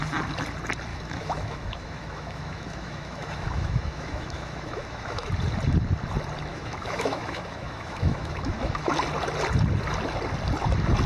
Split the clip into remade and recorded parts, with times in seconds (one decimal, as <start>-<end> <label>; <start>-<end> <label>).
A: 0.0-0.9 recorded; 0.9-5.3 remade; 5.3-6.5 recorded; 6.5-8.9 remade; 8.9-11.1 recorded

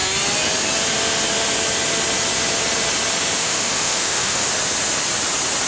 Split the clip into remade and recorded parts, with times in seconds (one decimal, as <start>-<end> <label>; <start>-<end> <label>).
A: 0.0-3.4 recorded; 3.4-4.5 remade; 4.5-5.7 recorded